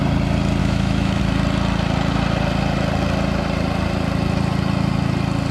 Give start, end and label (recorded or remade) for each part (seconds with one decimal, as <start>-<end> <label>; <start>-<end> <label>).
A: 0.0-0.6 recorded; 0.6-1.2 remade; 1.2-5.5 recorded